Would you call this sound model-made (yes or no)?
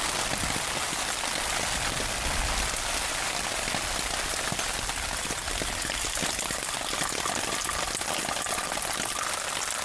no